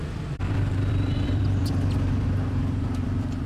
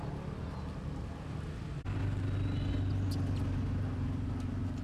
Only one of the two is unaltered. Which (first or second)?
second